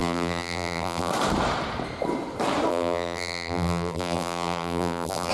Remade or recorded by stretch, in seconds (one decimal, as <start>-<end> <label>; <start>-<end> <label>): 0.0-1.1 remade; 1.1-2.7 recorded; 2.7-5.3 remade